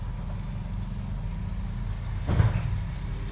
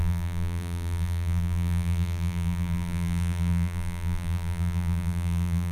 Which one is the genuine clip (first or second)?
first